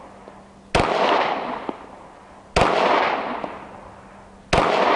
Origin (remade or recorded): recorded